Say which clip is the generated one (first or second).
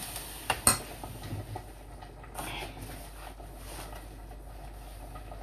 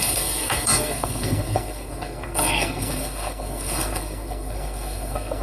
second